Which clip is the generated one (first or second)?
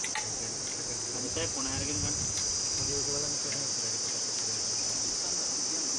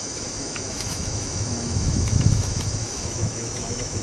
second